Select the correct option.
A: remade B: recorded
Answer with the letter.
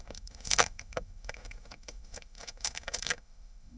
A